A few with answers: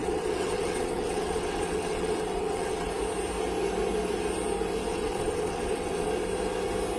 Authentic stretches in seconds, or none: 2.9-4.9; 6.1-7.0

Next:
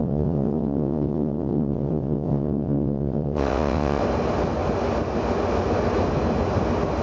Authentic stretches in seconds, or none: 4.0-7.0

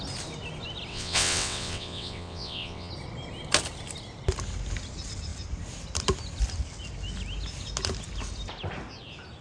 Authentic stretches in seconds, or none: 0.0-0.9; 2.9-9.4

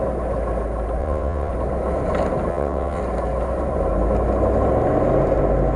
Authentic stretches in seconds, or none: 0.0-1.0; 1.5-2.5; 3.0-5.8

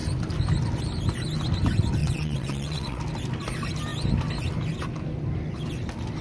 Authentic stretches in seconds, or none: 0.0-2.0; 3.0-6.2